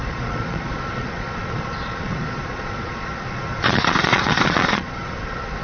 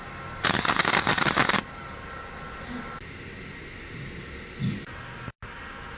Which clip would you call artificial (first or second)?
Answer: first